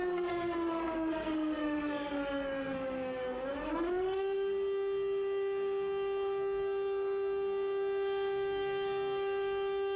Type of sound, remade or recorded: remade